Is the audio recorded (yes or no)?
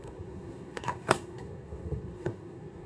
no